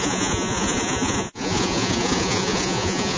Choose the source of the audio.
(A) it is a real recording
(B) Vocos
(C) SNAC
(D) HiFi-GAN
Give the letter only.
B